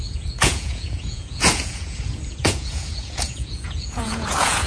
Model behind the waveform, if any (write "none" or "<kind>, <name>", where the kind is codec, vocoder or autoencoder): vocoder, Vocos